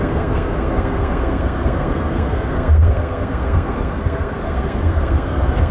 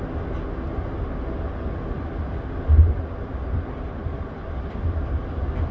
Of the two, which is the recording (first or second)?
second